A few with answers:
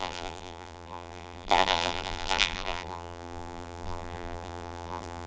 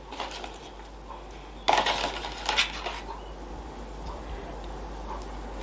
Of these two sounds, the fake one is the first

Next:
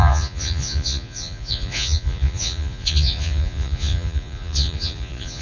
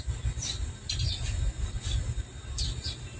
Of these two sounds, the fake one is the first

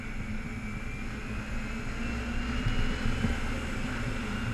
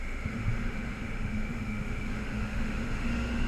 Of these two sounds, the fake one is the second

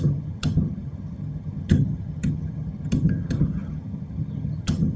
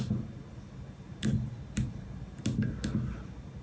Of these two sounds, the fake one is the first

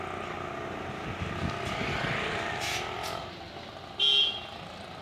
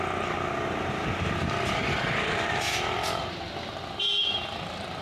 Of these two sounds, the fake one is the second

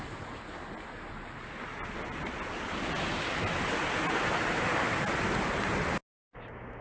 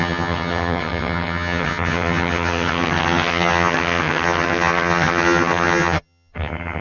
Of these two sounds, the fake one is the second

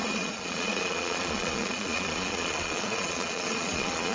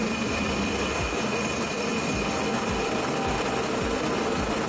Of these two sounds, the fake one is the first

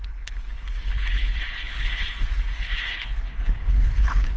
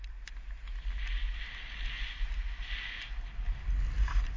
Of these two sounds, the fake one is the first